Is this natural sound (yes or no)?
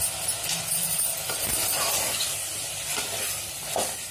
yes